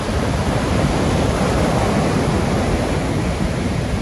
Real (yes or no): yes